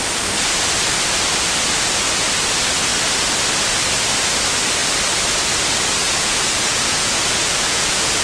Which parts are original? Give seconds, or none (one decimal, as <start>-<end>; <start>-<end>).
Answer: 0.0-6.0